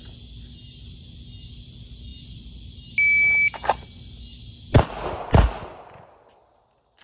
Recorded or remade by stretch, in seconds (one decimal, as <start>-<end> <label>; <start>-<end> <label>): 0.0-7.0 recorded